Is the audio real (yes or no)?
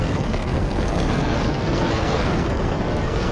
no